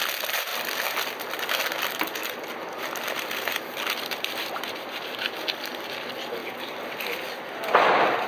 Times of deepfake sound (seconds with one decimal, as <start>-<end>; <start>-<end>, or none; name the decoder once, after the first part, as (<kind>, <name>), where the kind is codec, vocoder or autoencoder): 0.5-1.1 (vocoder, BigVGAN v2); 2.2-4.6; 6.4-7.0